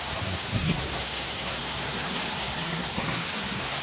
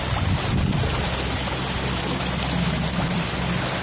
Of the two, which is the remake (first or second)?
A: first